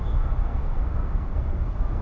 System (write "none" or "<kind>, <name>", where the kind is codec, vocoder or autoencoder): codec, SNAC